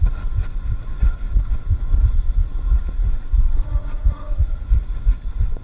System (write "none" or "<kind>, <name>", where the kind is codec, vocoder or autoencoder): vocoder, Vocos